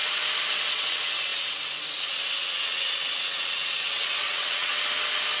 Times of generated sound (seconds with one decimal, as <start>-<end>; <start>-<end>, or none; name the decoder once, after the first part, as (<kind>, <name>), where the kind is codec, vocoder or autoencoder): 0.7-4.7 (vocoder, WaveNeXt)